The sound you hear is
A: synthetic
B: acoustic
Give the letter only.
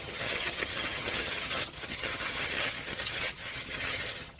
A